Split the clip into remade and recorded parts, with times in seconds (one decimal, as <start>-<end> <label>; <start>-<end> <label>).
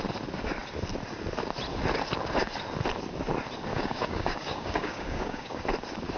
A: 0.0-3.7 recorded; 3.7-5.6 remade; 5.6-6.2 recorded